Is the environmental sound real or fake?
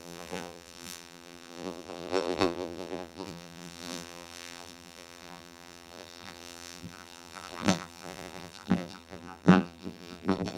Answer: fake